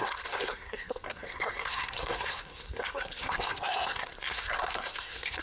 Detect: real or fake fake